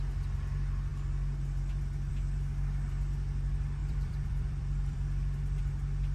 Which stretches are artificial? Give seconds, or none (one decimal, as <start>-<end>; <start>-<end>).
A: 3.8-5.6